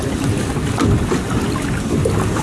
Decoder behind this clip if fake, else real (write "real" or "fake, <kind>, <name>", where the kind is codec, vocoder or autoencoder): real